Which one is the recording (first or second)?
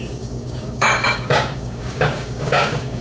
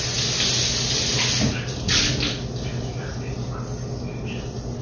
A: second